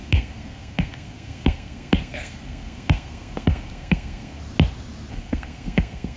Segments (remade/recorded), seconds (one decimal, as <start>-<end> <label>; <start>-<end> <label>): 0.0-4.4 remade; 4.4-5.1 recorded; 5.1-6.2 remade